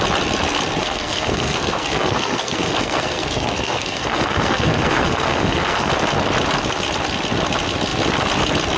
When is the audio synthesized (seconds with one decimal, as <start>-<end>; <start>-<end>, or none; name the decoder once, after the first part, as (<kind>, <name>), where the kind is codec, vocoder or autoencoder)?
0.8-5.9 (codec, SNAC)